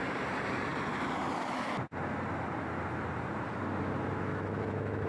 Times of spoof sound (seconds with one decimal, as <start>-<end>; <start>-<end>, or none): 4.3-5.1